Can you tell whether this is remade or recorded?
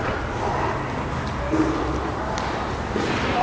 recorded